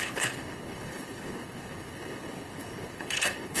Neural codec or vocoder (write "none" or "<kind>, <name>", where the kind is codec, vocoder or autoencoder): codec, HILCodec